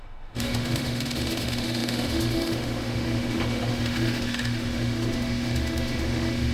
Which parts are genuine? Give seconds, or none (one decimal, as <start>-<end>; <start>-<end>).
none